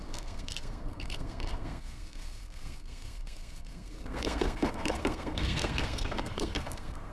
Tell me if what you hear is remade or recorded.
remade